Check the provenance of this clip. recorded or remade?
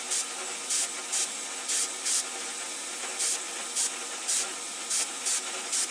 recorded